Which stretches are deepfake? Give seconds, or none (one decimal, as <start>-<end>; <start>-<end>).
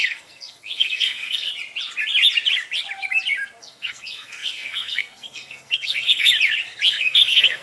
0.0-1.5; 3.6-6.3; 6.9-7.6